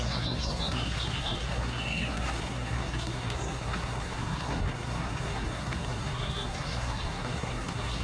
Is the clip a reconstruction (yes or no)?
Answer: yes